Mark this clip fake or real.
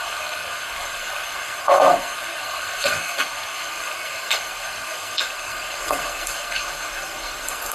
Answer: fake